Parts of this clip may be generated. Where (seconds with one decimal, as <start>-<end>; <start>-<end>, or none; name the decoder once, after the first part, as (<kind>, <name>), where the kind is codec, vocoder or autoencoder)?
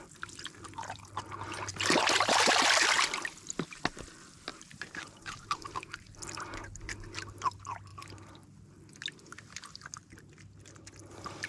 1.7-2.5 (vocoder, BigVGAN v2); 4.5-5.6